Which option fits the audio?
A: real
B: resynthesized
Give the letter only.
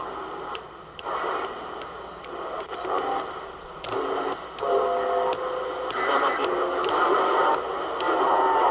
A